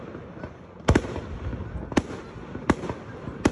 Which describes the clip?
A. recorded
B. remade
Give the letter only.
A